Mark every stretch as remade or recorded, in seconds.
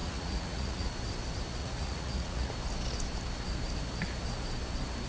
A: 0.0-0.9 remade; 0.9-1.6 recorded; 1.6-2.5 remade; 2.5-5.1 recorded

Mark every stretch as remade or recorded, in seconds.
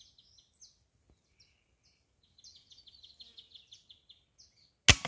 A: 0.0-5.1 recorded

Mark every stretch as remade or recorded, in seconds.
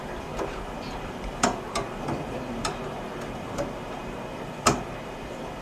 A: 0.0-5.6 remade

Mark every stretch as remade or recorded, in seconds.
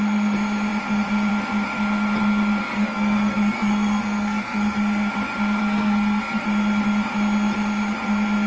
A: 0.0-2.6 recorded; 2.6-5.1 remade; 5.1-5.6 recorded; 5.6-6.4 remade; 6.4-8.5 recorded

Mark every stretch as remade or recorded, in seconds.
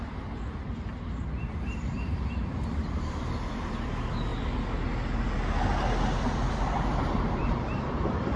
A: 0.0-4.3 remade; 4.3-6.0 recorded; 6.0-8.4 remade